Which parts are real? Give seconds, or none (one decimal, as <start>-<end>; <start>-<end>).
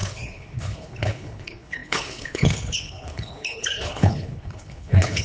none